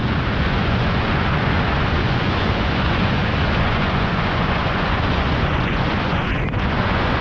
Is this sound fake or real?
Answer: fake